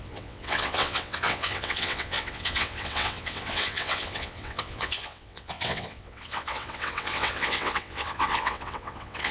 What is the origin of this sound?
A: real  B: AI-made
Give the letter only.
B